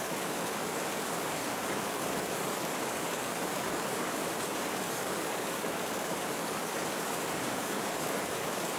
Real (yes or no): no